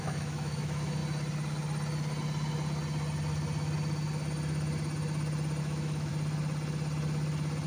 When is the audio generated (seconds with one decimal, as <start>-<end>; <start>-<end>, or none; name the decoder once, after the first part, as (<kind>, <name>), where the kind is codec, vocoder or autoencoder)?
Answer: 0.0-1.0 (autoencoder, DAC-VAE); 5.6-6.1